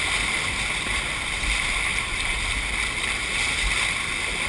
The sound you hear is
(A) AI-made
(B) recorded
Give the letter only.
B